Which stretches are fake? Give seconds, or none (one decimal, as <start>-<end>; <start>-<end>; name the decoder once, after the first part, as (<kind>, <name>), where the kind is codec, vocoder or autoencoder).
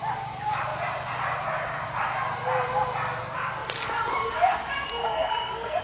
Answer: 5.0-5.8 (codec, SNAC)